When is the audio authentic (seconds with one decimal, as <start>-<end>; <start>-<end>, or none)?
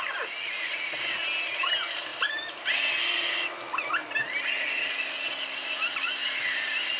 0.0-7.0